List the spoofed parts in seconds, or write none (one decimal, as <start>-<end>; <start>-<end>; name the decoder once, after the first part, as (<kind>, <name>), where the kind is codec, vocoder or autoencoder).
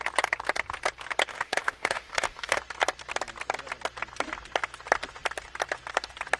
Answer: 1.3-2.6 (autoencoder, DAC-VAE)